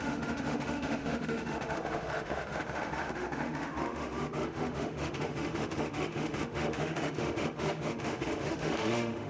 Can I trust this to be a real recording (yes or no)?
no